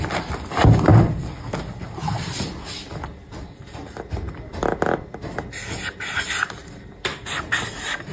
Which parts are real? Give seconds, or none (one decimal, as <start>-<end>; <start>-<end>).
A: 0.0-8.1